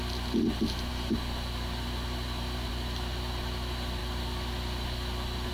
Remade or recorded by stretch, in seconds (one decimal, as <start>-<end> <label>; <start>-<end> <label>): 0.0-5.5 recorded

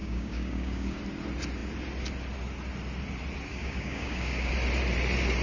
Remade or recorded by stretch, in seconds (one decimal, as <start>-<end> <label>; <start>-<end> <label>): 0.0-1.0 remade; 1.0-3.5 recorded; 3.5-4.5 remade; 4.5-5.4 recorded

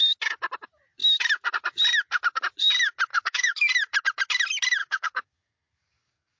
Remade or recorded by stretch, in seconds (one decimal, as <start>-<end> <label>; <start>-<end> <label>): 0.0-3.1 recorded; 3.1-3.7 remade; 3.7-4.8 recorded; 4.8-6.4 remade

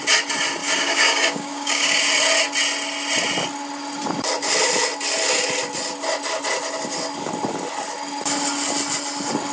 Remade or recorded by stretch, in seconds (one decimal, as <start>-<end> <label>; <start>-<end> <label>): 0.0-0.6 recorded; 0.6-2.0 remade; 2.0-9.5 recorded